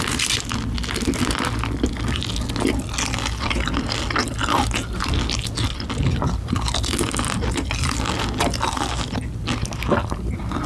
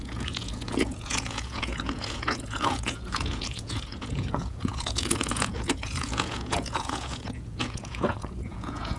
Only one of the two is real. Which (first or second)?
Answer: first